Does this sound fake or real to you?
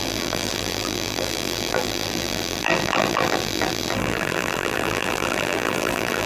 fake